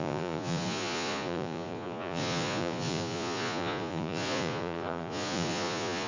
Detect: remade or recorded remade